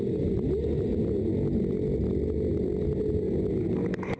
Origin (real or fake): real